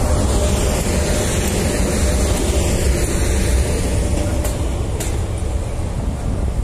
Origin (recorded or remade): recorded